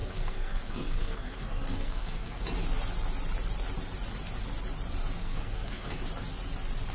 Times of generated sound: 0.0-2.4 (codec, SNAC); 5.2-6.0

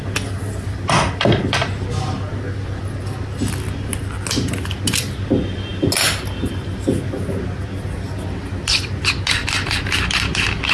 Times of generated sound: none